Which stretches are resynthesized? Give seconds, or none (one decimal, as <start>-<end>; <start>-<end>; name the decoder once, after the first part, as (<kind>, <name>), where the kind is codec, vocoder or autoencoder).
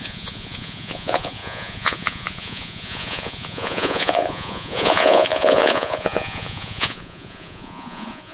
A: 0.0-8.3 (vocoder, Vocos)